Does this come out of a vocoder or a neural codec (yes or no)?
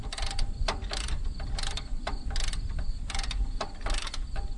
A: no